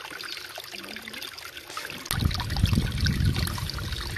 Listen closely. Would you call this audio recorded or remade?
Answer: recorded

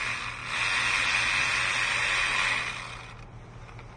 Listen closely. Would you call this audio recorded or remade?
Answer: recorded